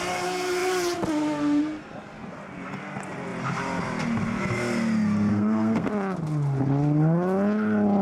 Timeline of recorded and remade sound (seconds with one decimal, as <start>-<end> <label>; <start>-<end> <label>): 0.0-5.3 recorded; 5.3-5.9 remade; 5.9-8.0 recorded